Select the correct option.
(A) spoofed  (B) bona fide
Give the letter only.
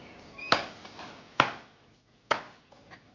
B